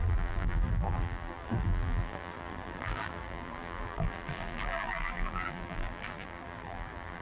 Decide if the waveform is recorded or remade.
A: remade